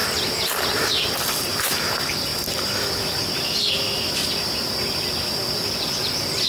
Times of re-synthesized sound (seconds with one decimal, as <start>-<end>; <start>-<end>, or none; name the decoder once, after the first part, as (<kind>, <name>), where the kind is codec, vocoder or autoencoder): none

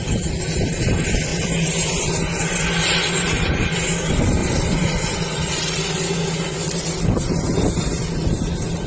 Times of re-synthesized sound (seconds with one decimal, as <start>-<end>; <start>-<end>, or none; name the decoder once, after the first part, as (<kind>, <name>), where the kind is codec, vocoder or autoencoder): 4.4-5.8 (vocoder, BigVGAN v2)

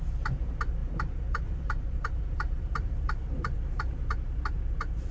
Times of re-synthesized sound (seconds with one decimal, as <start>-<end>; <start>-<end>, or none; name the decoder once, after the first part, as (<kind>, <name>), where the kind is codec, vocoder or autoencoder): 0.8-3.9 (vocoder, BigVGAN v2)

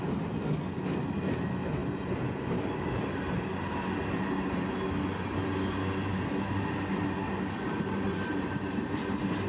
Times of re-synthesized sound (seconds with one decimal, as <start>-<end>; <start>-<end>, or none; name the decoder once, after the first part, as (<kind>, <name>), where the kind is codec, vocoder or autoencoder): 1.8-5.4 (vocoder, BigVGAN v2); 6.1-9.0

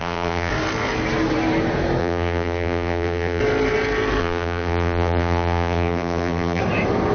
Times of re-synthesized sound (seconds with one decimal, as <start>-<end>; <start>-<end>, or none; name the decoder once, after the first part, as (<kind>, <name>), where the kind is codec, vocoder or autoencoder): 0.0-0.5 (vocoder, BigVGAN v2); 2.0-3.4; 4.2-6.6

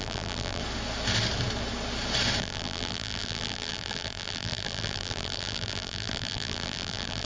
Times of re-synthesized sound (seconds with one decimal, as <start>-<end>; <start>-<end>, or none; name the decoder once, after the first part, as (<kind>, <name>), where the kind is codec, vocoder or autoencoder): 0.0-0.6 (vocoder, BigVGAN v2); 2.4-7.3

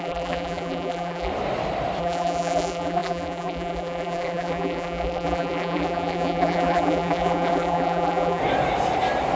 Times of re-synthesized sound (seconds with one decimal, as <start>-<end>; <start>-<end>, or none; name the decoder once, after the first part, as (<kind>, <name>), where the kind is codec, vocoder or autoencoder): 0.0-1.3 (vocoder, BigVGAN v2); 2.0-8.4

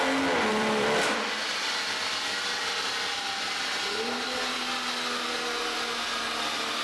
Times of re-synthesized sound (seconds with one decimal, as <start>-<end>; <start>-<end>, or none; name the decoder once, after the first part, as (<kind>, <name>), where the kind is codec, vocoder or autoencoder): 0.5-1.3 (vocoder, BigVGAN v2)